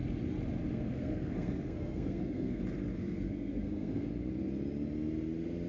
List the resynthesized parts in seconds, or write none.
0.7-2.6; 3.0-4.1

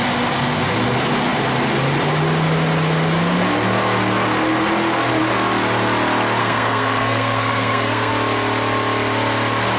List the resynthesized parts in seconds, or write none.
6.4-8.1

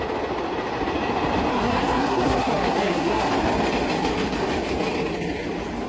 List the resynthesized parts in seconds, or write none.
1.5-3.3

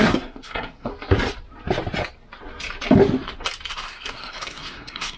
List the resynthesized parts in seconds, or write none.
0.0-0.9; 3.7-5.2

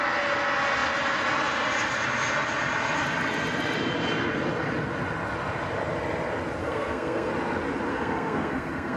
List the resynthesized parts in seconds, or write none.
6.6-7.3; 7.9-9.0

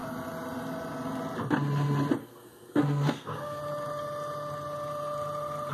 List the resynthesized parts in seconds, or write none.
2.2-3.6